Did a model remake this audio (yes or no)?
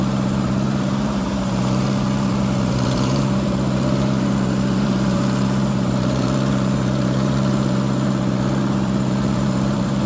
yes